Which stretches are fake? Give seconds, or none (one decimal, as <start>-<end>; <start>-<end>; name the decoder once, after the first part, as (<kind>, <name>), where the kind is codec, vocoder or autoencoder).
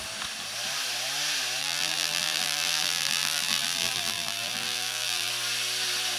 1.6-5.3 (vocoder, BigVGAN v2)